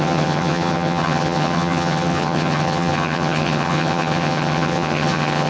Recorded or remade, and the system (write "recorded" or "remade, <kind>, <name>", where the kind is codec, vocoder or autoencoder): remade, vocoder, HiFi-GAN